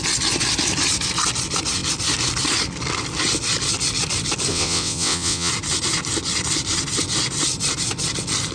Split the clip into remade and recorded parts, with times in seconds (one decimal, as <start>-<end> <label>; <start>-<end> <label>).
0.0-4.5 recorded; 4.5-5.5 remade; 5.5-8.5 recorded